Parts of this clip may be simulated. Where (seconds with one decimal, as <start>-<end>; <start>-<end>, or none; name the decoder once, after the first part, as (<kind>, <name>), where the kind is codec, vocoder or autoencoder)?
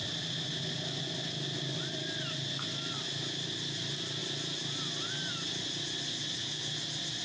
none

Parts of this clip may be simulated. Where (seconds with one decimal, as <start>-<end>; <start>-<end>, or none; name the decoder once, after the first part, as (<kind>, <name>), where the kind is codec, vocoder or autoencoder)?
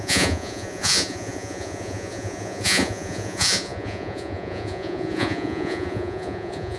0.0-6.8 (vocoder, Vocos)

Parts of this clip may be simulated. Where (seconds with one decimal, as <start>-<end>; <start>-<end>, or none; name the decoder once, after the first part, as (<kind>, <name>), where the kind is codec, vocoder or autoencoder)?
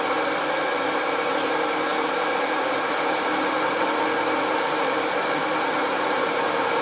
5.8-6.8 (vocoder, BigVGAN v2)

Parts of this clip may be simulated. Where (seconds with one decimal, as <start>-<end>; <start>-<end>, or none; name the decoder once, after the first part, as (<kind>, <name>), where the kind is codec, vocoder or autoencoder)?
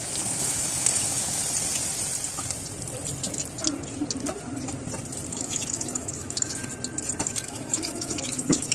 0.0-1.4 (autoencoder, DAC-VAE); 5.3-6.6; 7.2-8.7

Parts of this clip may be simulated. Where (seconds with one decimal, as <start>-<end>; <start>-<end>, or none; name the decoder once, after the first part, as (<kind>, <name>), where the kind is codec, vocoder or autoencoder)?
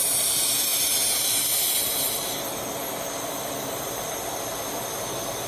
none